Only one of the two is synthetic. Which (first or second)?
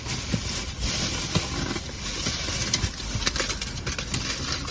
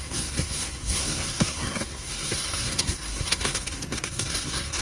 second